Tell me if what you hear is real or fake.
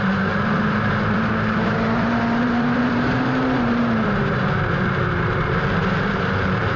fake